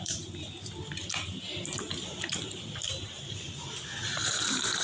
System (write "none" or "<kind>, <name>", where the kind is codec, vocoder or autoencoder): vocoder, BigVGAN v2